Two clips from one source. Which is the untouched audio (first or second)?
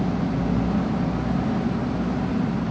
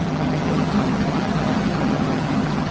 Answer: first